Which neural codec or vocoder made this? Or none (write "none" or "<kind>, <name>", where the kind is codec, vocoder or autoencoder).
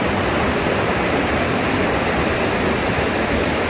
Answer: none